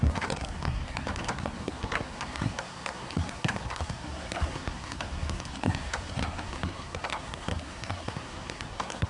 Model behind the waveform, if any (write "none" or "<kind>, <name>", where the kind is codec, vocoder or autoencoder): codec, SNAC